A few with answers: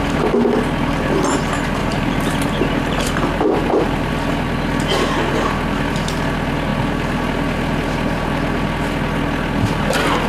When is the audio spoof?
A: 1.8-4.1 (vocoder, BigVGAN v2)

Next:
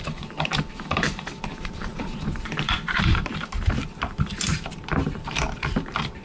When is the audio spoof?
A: 0.0-6.2 (vocoder, BigVGAN v2)